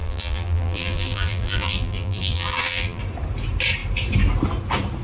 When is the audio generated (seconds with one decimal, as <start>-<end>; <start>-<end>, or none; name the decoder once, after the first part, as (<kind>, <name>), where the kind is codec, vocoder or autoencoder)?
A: 0.0-3.0 (vocoder, BigVGAN v2)